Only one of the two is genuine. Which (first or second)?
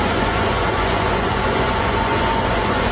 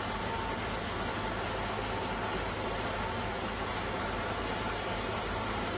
second